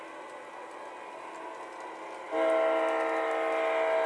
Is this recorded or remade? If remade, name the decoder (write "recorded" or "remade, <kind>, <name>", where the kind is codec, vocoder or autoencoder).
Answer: recorded